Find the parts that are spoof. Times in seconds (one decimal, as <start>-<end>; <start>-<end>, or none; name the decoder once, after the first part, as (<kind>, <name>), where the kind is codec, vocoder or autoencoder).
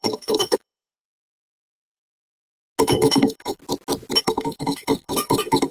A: 0.0-2.0 (codec, SNAC); 2.8-3.6; 4.2-5.7